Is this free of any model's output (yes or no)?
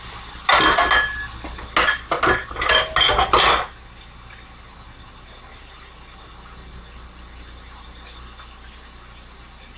yes